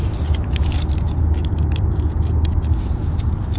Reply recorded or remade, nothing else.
recorded